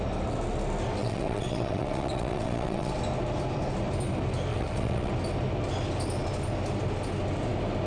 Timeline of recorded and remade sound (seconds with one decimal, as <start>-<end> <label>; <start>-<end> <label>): 0.0-1.0 recorded; 1.0-2.9 remade; 2.9-4.5 recorded; 4.5-5.1 remade; 5.1-7.9 recorded